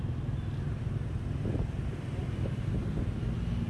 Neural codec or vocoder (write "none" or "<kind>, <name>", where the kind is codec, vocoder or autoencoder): none